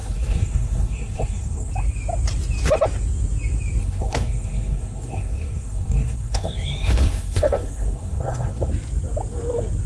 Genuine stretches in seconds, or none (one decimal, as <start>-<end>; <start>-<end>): 1.7-3.8; 8.7-9.9